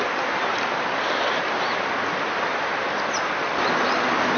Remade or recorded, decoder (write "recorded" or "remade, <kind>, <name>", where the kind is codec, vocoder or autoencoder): recorded